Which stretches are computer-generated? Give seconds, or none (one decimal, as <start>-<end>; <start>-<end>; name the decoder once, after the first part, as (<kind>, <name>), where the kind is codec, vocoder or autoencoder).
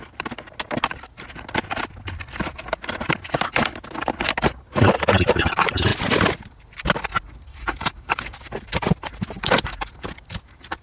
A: none